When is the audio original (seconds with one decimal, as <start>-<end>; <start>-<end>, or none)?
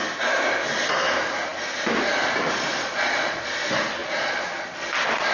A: 0.0-2.8; 3.5-4.0; 4.5-5.3